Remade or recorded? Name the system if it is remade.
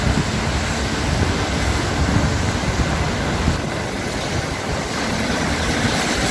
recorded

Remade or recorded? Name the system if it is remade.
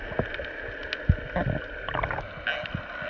recorded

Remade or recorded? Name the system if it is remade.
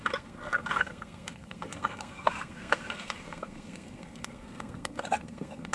remade, codec, SNAC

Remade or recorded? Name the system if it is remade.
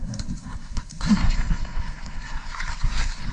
remade, codec, SNAC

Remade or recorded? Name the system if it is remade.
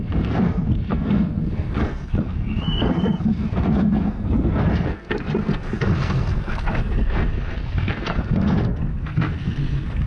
remade, codec, SNAC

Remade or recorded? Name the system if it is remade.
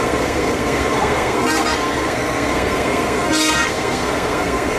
remade, codec, SNAC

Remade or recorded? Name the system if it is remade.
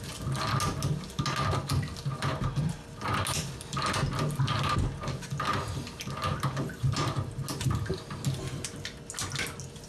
recorded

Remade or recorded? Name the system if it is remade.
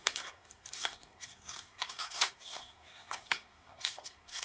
remade, codec, SNAC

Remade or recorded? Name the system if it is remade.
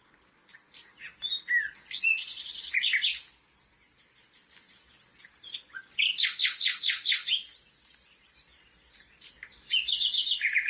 recorded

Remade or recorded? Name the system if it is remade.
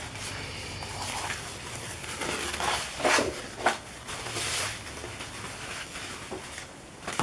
recorded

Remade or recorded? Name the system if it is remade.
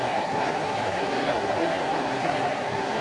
remade, codec, SNAC